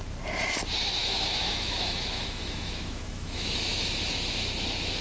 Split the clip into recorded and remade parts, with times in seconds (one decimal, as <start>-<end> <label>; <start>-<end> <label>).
0.0-1.0 recorded; 1.0-4.0 remade; 4.0-5.0 recorded